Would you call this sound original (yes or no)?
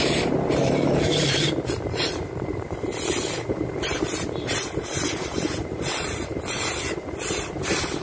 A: no